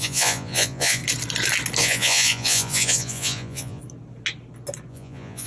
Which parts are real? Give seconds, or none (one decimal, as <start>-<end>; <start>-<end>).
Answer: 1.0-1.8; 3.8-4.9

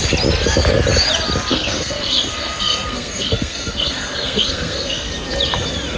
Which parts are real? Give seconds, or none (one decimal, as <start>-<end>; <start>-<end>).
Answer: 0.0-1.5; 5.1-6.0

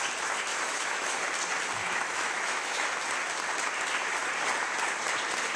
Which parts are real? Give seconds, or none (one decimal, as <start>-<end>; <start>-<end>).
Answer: 0.0-0.5; 1.1-1.8; 2.9-5.6